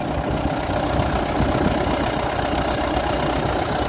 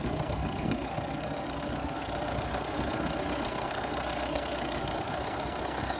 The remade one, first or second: second